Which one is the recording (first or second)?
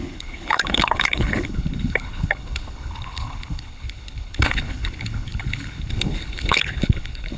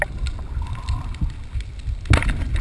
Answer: second